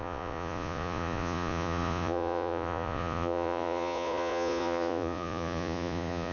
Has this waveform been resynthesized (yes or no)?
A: yes